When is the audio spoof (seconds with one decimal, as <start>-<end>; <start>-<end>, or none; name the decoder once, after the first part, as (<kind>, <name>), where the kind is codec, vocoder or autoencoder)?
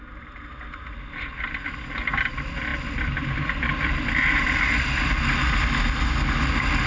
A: 2.7-5.2 (vocoder, BigVGAN v2)